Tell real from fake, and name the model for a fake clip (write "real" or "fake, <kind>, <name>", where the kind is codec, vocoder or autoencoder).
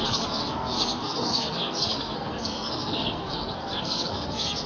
fake, codec, SNAC